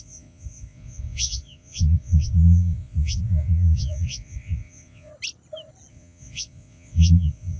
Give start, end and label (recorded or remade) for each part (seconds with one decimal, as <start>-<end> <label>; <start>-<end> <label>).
0.0-5.1 remade; 5.1-5.9 recorded; 5.9-7.6 remade

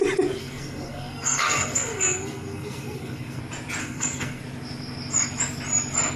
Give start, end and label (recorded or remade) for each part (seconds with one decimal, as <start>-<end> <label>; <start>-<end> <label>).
0.0-0.4 recorded; 0.4-3.4 remade; 3.4-3.8 recorded; 3.8-4.4 remade; 4.4-6.2 recorded

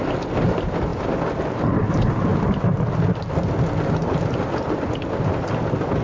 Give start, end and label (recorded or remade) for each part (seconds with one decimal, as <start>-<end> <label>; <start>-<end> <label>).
0.0-6.0 recorded

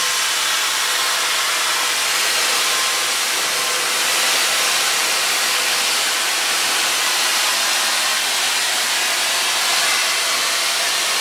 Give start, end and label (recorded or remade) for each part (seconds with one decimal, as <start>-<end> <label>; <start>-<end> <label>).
0.0-11.2 recorded

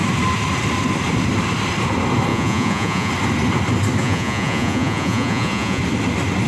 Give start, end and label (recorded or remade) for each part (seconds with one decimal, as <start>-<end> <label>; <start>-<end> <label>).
0.0-2.3 recorded; 2.3-3.1 remade; 3.1-4.0 recorded; 4.0-5.8 remade; 5.8-6.5 recorded